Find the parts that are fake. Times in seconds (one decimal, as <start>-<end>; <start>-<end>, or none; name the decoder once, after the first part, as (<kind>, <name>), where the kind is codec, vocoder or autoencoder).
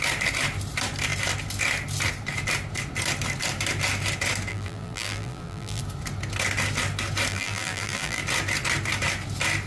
4.5-5.8 (vocoder, BigVGAN v2); 7.3-8.2